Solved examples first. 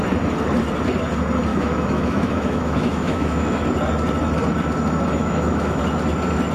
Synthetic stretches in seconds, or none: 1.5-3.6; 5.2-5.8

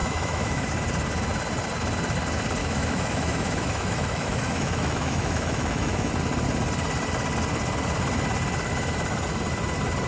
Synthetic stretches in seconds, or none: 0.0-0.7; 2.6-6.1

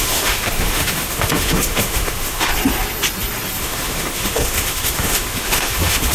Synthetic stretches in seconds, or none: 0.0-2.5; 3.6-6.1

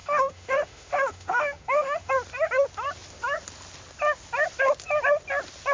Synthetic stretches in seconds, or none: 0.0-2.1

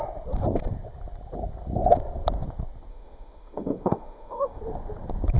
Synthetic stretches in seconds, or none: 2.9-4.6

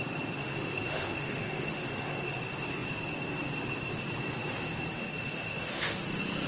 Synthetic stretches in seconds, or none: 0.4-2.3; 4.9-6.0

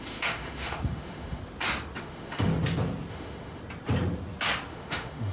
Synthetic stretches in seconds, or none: 0.0-1.4; 2.0-2.5; 3.1-3.6; 4.7-5.3